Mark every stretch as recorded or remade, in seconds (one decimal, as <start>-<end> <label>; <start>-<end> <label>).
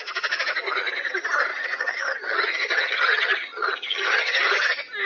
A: 0.0-1.5 recorded; 1.5-4.5 remade; 4.5-5.0 recorded